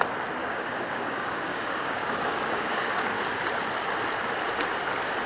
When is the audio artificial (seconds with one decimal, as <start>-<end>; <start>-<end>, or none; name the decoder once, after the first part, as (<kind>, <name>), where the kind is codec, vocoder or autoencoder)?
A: 0.4-3.1 (codec, DAC)